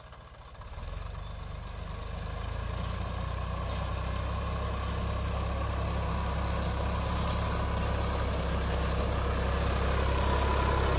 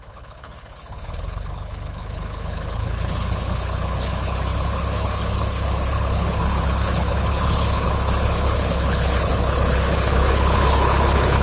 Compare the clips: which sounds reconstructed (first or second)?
second